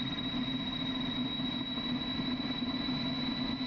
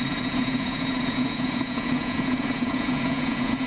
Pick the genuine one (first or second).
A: first